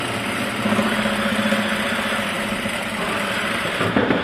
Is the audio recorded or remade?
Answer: remade